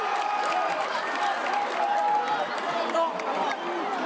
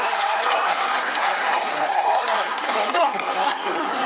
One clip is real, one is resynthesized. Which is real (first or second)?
first